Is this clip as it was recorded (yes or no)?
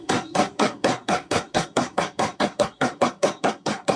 no